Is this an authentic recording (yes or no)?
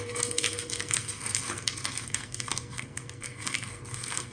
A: no